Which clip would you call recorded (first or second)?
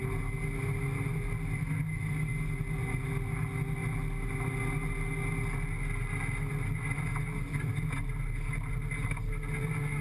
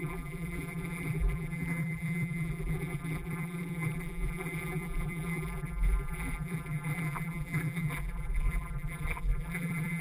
first